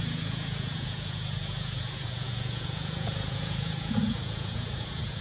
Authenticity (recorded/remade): remade